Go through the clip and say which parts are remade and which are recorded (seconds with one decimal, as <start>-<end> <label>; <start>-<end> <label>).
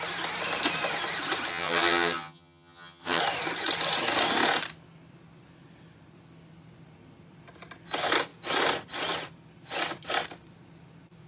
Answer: 0.0-1.5 recorded; 1.5-3.2 remade; 3.2-11.3 recorded